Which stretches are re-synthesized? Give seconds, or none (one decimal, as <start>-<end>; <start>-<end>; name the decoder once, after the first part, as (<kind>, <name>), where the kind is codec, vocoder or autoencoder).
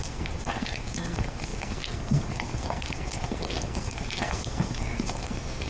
0.0-5.7 (codec, SNAC)